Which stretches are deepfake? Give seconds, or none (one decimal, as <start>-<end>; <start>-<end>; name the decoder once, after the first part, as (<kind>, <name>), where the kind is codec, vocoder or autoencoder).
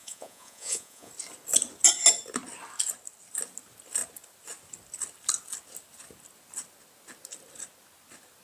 0.0-1.1 (vocoder, Vocos)